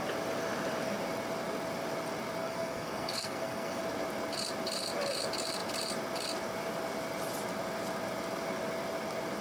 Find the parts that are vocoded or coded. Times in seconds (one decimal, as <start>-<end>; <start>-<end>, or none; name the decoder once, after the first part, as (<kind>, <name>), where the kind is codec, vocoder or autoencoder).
2.4-3.8 (codec, SNAC)